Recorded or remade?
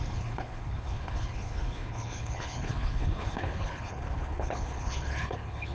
remade